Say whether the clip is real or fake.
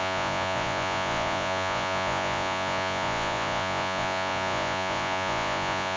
fake